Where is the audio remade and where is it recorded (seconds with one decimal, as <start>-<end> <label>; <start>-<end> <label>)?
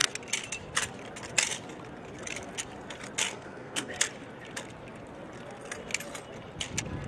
0.0-3.3 recorded; 3.3-3.9 remade; 3.9-7.1 recorded